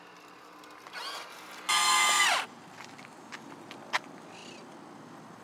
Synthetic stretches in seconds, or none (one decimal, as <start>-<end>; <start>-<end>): none

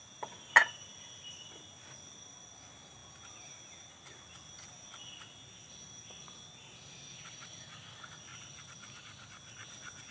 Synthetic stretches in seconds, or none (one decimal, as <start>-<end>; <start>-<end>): none